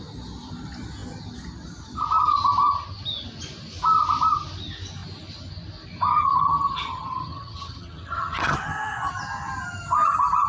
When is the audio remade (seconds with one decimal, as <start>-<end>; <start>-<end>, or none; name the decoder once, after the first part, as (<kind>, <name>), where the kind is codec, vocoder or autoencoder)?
6.1-9.1 (vocoder, HiFi-GAN)